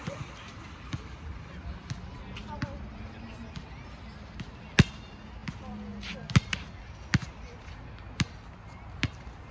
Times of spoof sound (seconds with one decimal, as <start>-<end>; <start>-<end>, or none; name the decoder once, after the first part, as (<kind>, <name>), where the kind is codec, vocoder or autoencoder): none